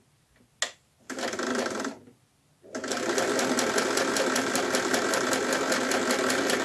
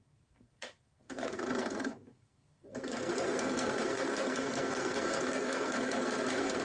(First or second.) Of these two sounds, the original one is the first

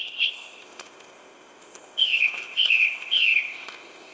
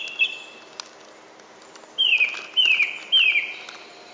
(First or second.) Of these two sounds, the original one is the second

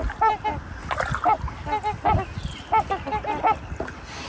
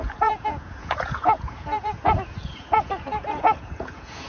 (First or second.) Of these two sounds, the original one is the first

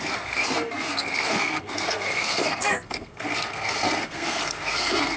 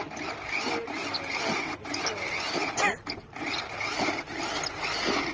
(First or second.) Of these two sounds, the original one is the second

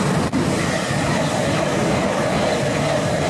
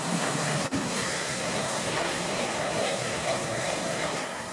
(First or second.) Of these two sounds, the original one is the first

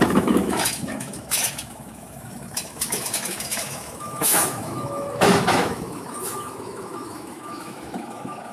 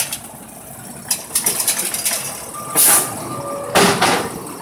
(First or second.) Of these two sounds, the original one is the second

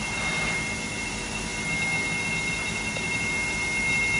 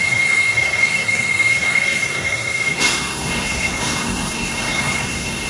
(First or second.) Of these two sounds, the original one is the first